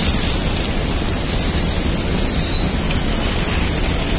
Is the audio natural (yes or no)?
yes